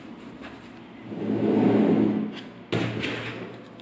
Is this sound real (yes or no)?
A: yes